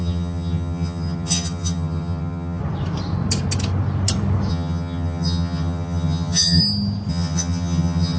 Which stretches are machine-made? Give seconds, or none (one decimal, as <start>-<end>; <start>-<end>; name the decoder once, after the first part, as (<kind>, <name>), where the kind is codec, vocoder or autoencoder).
0.0-2.6 (vocoder, HiFi-GAN); 4.5-6.6; 7.1-8.2